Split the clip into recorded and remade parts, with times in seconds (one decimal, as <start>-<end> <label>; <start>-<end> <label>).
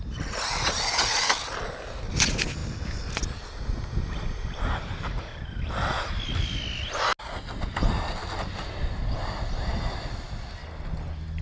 0.0-11.4 recorded